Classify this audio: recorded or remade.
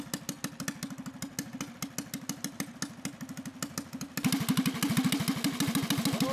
recorded